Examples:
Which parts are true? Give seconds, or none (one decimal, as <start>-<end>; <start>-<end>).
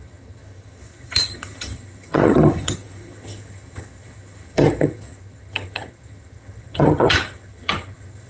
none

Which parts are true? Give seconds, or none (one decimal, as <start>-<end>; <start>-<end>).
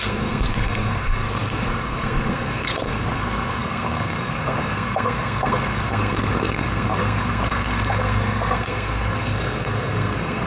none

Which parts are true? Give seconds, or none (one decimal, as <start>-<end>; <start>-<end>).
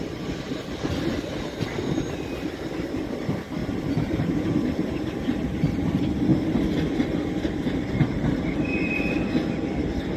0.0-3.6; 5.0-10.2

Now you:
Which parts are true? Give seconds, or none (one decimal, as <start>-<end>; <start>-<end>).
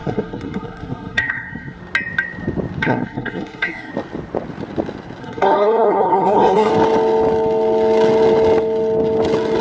1.8-2.8; 3.9-5.2; 6.7-9.6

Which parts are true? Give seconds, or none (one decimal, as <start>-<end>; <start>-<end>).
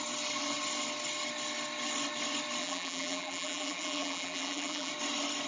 0.0-2.6; 4.9-5.5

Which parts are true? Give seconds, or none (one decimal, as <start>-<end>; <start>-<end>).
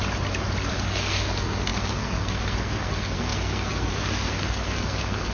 0.0-0.7